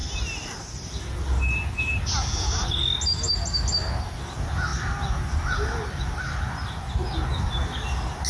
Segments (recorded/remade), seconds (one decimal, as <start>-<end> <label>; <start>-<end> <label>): 0.0-8.3 recorded